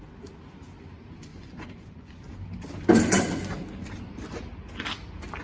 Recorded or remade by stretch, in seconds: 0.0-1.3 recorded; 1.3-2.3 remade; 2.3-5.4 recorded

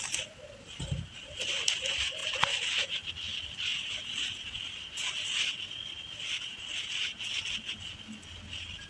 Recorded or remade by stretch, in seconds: 0.0-8.9 recorded